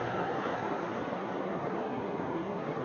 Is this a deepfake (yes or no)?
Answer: yes